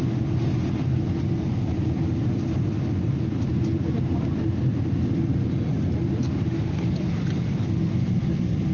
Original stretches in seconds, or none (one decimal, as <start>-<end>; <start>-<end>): 0.0-8.7